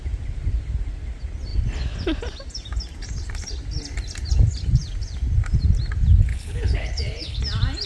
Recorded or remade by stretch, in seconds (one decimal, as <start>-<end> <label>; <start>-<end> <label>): 0.0-6.3 recorded; 6.3-7.4 remade; 7.4-7.9 recorded